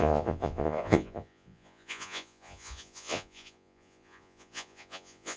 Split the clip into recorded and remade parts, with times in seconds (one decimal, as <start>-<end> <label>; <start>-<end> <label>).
0.0-5.4 remade